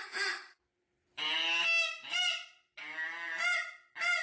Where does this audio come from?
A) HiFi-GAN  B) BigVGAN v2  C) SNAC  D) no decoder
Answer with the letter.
D